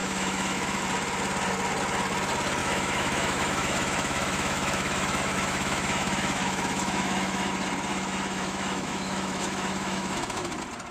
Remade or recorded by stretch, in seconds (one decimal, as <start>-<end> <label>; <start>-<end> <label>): 0.0-0.8 remade; 0.8-2.6 recorded; 2.6-7.5 remade; 7.5-7.9 recorded; 7.9-10.5 remade; 10.5-10.9 recorded